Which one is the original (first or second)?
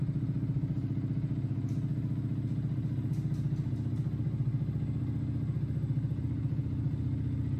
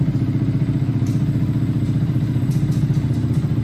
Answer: first